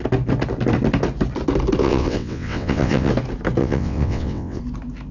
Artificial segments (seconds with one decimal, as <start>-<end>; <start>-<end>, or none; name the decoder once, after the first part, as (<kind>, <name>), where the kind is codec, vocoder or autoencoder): 1.8-3.1 (vocoder, WaveNeXt); 3.6-4.6